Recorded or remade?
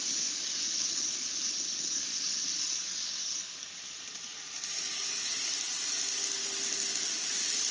recorded